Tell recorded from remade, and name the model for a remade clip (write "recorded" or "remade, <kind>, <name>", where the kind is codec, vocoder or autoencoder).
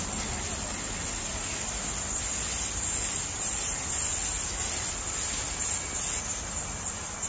recorded